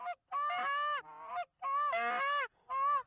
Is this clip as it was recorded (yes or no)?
yes